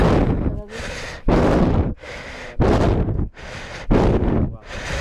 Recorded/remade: recorded